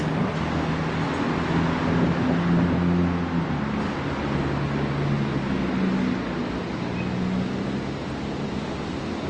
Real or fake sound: real